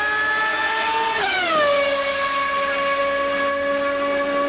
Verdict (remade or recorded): recorded